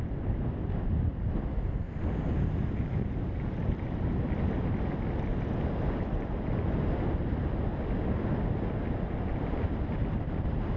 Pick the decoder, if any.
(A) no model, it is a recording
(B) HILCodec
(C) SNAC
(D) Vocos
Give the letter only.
A